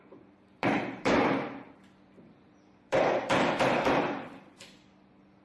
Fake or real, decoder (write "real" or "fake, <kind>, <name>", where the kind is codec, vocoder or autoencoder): fake, vocoder, BigVGAN v2